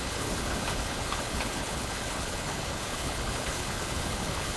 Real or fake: fake